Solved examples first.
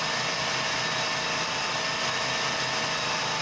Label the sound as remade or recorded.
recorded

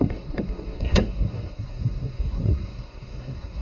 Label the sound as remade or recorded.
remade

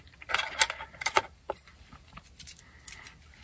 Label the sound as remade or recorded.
recorded